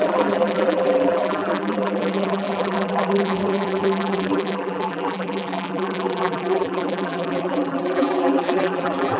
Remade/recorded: remade